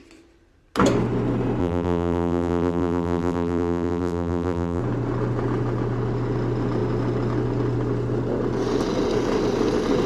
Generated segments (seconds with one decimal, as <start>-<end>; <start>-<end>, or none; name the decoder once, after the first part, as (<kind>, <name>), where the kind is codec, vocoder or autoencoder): 1.6-4.8 (vocoder, BigVGAN v2)